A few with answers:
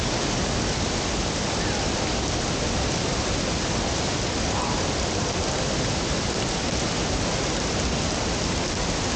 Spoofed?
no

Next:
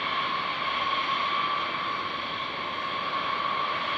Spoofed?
no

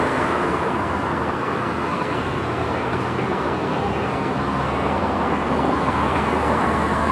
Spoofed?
yes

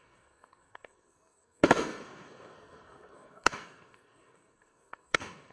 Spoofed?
yes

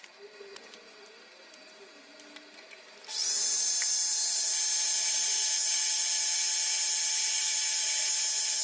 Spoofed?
no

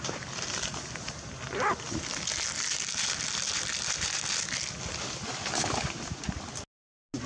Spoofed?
no